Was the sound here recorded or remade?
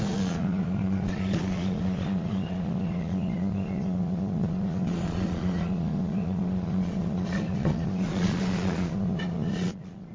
remade